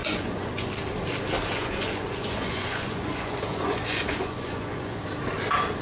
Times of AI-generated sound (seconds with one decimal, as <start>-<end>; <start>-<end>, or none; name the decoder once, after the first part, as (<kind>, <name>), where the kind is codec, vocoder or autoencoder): 0.0-0.7 (vocoder, Vocos); 1.5-5.0